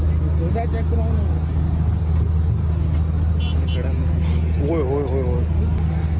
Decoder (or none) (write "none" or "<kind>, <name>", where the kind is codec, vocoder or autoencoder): none